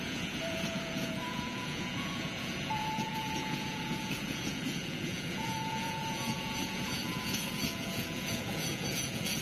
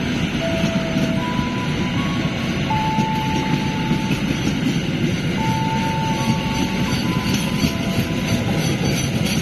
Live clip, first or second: second